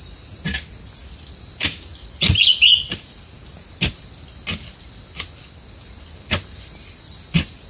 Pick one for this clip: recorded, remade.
recorded